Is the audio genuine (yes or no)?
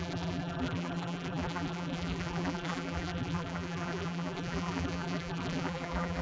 no